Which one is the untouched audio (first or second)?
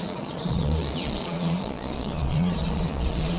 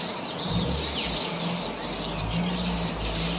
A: second